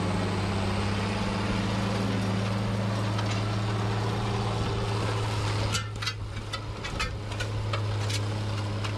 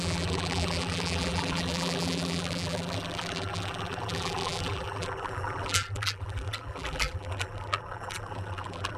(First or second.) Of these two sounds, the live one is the first